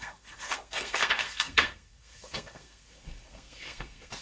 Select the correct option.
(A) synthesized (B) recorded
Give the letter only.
A